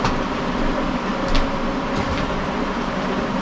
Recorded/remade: recorded